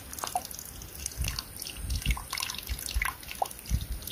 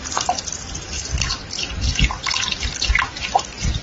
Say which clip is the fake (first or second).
second